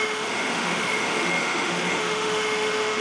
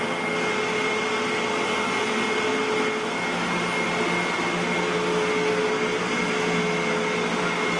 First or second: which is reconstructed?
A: first